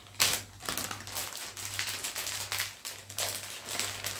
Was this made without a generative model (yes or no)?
yes